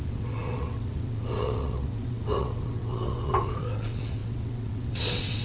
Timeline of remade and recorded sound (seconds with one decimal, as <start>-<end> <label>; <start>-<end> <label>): 0.0-5.4 remade